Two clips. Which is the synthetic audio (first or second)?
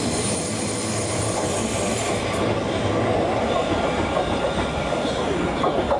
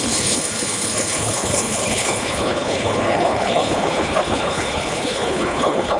second